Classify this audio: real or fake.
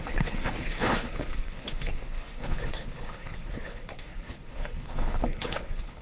fake